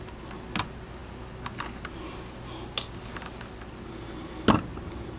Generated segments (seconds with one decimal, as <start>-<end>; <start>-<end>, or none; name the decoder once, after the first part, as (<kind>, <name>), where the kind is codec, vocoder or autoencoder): none